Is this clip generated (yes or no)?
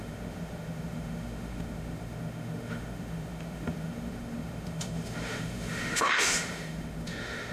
yes